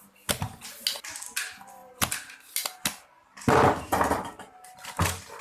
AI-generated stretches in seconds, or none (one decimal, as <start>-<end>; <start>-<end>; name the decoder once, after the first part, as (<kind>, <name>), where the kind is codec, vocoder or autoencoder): none